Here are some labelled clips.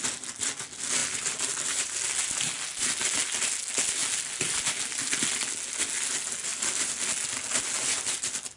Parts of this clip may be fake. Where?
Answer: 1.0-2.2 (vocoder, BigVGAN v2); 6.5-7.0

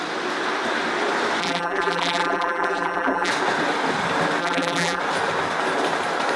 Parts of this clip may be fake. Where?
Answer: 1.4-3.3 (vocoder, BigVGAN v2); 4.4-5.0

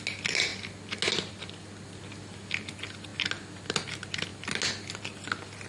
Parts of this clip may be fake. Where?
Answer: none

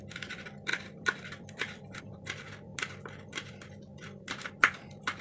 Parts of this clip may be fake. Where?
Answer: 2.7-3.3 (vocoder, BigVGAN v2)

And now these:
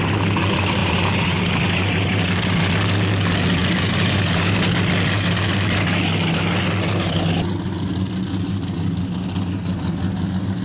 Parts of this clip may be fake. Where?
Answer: 0.8-2.7 (vocoder, BigVGAN v2); 3.6-4.6

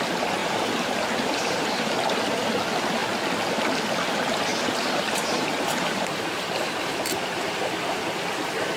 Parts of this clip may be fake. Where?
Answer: 0.4-1.7 (vocoder, BigVGAN v2); 4.5-8.1

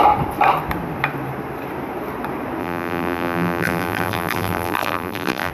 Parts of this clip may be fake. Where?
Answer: 2.6-5.5 (vocoder, BigVGAN v2)

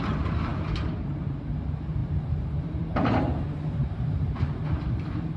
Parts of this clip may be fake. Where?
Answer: 0.0-5.4 (vocoder, BigVGAN v2)